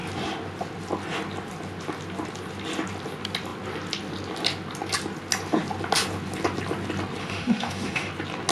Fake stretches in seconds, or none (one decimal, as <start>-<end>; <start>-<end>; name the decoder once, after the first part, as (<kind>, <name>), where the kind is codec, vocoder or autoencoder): 7.2-8.1 (autoencoder, DAC-VAE)